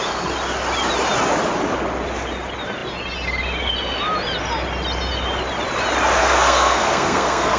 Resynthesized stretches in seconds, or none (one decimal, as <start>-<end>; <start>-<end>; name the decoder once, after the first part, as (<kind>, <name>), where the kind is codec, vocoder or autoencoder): 6.2-7.6 (codec, SNAC)